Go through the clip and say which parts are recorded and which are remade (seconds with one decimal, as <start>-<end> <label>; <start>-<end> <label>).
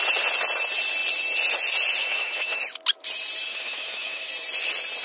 0.0-2.0 recorded; 2.0-2.6 remade; 2.6-3.5 recorded; 3.5-4.3 remade; 4.3-5.0 recorded